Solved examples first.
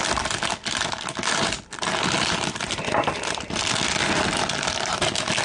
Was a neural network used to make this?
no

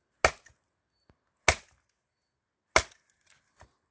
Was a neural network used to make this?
no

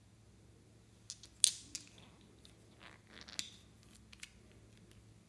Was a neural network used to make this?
no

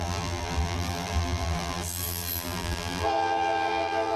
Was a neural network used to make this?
yes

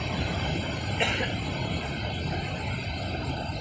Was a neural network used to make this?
no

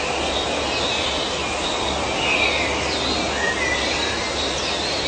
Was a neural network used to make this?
no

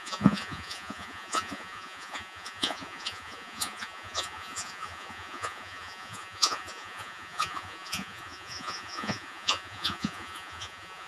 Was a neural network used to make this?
yes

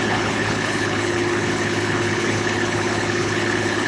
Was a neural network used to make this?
yes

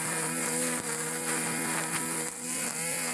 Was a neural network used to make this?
no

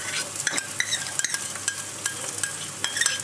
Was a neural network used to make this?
no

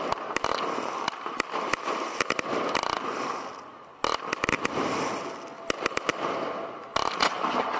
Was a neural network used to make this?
no